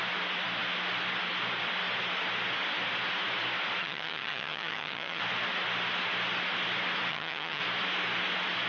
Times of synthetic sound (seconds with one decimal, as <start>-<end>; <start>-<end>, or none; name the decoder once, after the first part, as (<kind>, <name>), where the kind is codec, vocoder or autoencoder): 3.8-5.2 (vocoder, HiFi-GAN); 7.1-7.6